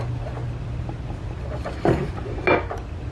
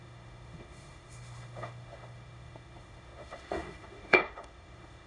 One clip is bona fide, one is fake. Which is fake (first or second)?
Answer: second